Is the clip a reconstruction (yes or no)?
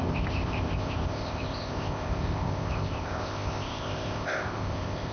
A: yes